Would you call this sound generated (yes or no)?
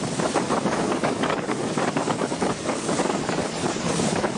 yes